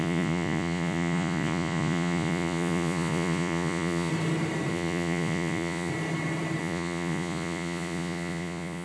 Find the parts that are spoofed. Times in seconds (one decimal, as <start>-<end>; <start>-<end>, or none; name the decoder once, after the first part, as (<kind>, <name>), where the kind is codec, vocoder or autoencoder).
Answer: 0.0-4.1 (vocoder, Vocos); 4.7-5.9; 6.6-8.8